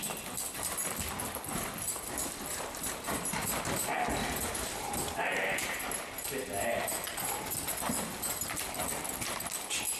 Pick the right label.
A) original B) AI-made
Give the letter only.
A